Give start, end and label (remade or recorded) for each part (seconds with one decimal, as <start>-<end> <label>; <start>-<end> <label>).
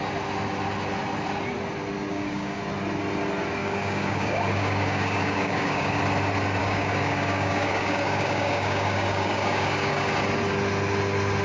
0.0-2.1 recorded; 2.1-2.6 remade; 2.6-3.6 recorded; 3.6-6.0 remade; 6.0-6.6 recorded; 6.6-10.1 remade; 10.1-11.4 recorded